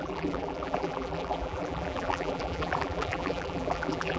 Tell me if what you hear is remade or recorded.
remade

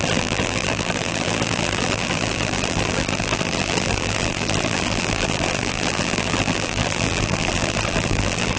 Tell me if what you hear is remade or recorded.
remade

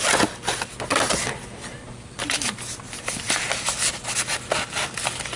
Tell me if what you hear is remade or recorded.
recorded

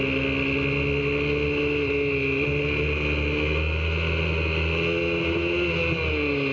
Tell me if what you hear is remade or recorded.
recorded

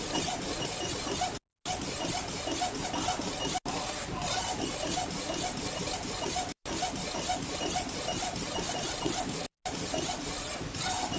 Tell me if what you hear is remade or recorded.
recorded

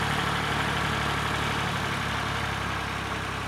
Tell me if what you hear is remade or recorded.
recorded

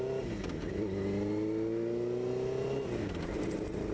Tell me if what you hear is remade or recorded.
recorded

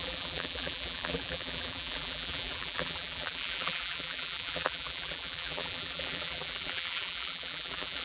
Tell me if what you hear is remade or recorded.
remade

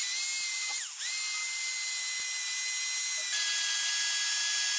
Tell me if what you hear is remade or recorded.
recorded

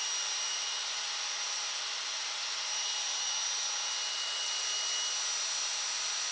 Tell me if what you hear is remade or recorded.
recorded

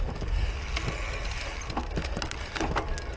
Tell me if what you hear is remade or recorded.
recorded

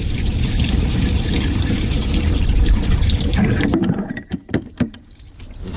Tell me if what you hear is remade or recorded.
remade